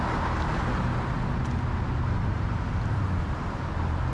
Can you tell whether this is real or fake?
real